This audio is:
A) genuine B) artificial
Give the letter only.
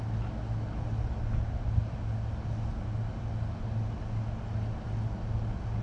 A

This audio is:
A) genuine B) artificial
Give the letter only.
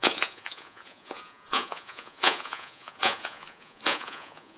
B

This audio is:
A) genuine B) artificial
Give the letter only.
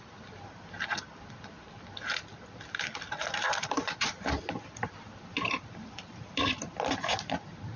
B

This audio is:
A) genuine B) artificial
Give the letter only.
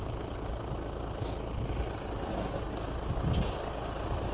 A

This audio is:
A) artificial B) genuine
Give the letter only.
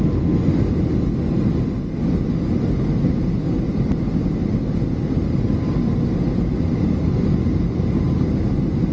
B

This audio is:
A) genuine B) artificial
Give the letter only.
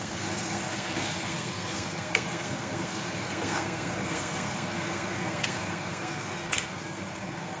B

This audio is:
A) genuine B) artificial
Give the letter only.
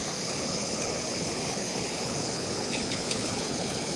B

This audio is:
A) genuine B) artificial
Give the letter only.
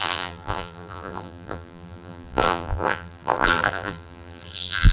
B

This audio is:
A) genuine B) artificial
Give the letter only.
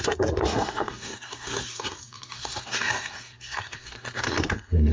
B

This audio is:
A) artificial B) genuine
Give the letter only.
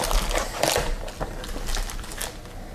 B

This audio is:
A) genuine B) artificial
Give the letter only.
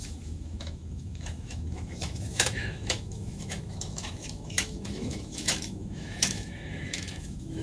B